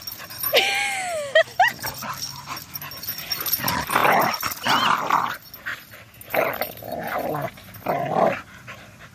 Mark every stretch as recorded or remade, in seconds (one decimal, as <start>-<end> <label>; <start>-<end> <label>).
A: 0.0-9.1 recorded

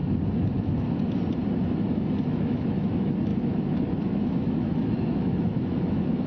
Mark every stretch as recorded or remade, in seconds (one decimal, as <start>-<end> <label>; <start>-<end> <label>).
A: 0.0-1.9 recorded; 1.9-6.3 remade

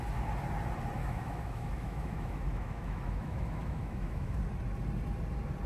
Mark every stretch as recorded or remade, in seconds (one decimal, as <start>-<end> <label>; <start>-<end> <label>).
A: 0.0-1.0 recorded; 1.0-4.4 remade; 4.4-5.7 recorded

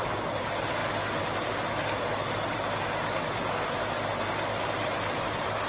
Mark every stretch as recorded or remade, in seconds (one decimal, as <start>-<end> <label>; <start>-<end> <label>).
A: 0.0-5.7 recorded

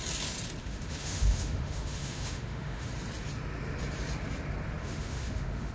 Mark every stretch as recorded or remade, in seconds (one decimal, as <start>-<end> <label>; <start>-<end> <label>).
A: 0.0-0.6 recorded; 0.6-2.9 remade; 2.9-4.8 recorded; 4.8-5.7 remade